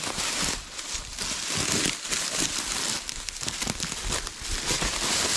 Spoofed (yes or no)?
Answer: no